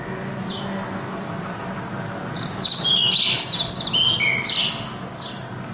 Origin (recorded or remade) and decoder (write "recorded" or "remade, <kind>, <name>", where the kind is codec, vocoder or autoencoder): recorded